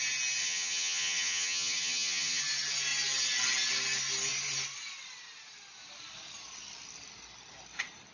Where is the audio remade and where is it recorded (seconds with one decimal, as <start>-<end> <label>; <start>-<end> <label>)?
0.0-0.4 recorded; 0.4-2.4 remade; 2.4-8.1 recorded